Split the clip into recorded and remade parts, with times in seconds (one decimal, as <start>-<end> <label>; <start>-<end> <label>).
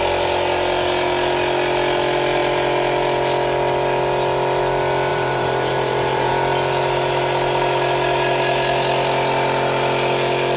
0.0-5.1 recorded; 5.1-6.3 remade; 6.3-10.6 recorded